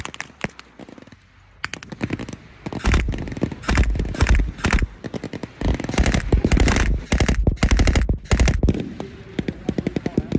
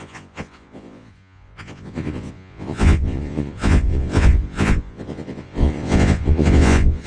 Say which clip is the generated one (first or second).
second